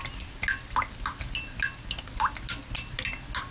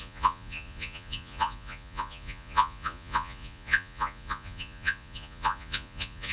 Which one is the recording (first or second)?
first